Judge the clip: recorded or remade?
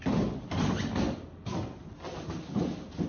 recorded